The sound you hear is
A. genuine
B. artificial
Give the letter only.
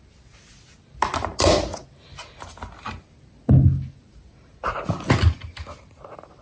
A